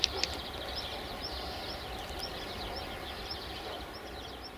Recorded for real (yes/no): no